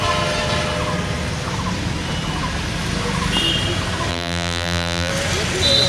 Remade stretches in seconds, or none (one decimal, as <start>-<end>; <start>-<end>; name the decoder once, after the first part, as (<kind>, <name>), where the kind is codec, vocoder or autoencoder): 4.1-5.1 (vocoder, BigVGAN v2)